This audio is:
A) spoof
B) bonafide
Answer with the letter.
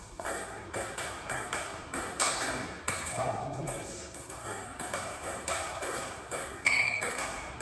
A